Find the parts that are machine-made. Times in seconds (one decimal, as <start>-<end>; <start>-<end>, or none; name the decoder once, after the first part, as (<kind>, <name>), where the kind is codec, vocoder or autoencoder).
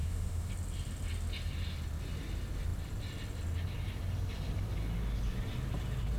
0.0-0.5 (autoencoder, DAC-VAE)